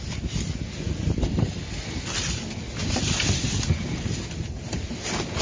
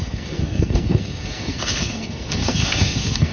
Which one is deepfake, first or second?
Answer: second